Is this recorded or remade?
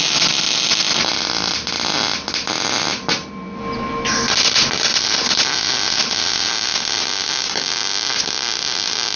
recorded